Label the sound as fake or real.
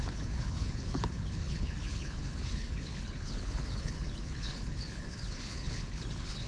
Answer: fake